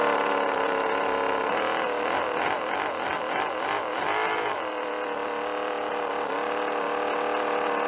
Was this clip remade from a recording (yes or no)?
no